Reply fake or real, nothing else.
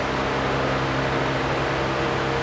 real